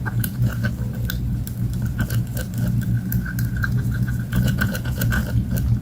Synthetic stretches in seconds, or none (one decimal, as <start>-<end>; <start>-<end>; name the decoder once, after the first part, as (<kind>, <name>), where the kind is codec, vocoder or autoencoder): 0.0-0.6 (vocoder, Vocos); 3.5-5.2